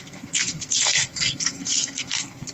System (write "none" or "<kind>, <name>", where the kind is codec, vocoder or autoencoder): codec, SNAC